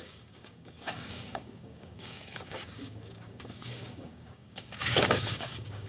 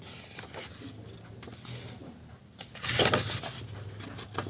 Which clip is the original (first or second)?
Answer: second